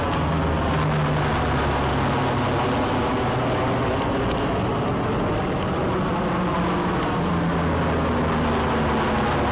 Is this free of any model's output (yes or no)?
yes